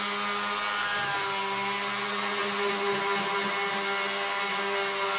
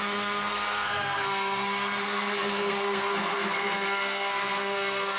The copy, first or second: second